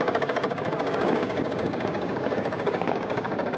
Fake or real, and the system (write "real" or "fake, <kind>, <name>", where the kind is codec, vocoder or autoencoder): fake, codec, DAC